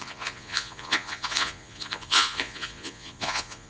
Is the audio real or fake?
fake